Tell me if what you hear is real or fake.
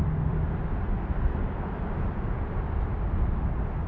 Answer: real